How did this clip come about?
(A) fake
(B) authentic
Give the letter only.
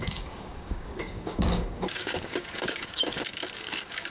A